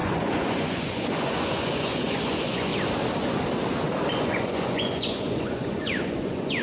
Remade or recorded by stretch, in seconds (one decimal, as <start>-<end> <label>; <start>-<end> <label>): 0.0-2.7 remade; 2.7-4.1 recorded; 4.1-6.6 remade